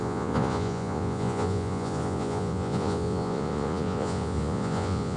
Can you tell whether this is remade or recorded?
remade